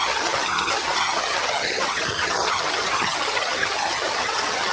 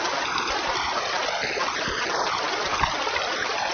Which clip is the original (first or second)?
second